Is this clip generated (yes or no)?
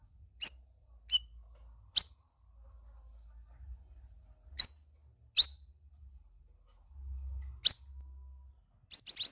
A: no